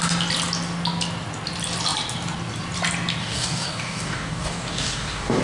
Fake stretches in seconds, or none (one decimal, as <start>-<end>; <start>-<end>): 3.2-5.4